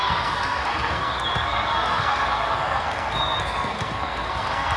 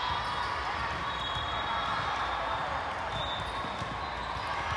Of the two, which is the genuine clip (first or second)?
second